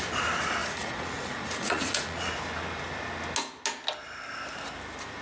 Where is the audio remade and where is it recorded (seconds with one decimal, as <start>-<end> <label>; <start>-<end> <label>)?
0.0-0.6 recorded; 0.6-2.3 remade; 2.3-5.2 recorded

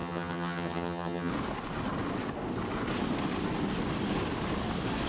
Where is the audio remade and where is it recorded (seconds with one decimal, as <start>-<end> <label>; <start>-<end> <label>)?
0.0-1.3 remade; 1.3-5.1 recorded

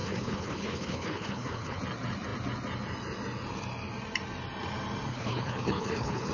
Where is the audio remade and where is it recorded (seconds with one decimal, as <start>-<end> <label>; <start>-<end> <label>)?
0.0-1.8 remade; 1.8-5.1 recorded; 5.1-6.3 remade

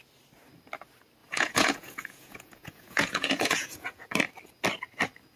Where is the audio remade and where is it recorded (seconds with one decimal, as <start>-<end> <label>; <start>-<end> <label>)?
0.0-1.2 recorded; 1.2-4.1 remade; 4.1-5.4 recorded

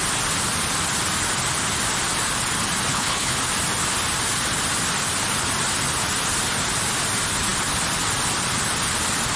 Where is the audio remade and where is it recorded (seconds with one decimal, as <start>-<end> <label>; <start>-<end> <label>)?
0.0-2.9 recorded; 2.9-3.4 remade; 3.4-9.4 recorded